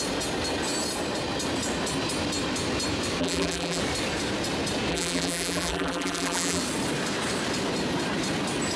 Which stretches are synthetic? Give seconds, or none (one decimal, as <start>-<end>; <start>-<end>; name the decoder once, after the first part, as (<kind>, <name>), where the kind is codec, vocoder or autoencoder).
3.2-3.8 (vocoder, BigVGAN v2); 4.9-6.6